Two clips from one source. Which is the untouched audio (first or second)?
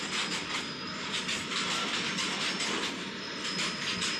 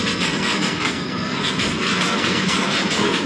first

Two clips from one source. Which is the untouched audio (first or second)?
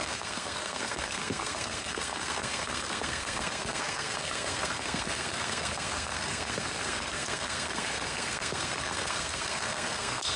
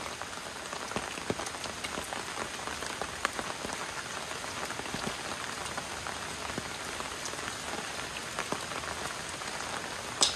second